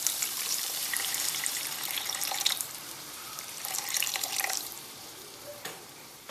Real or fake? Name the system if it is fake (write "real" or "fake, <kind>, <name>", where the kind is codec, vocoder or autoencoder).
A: fake, vocoder, BigVGAN v2